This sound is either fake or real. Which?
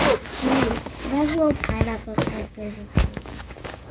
fake